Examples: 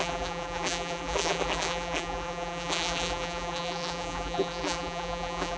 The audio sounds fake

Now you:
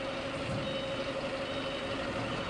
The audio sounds real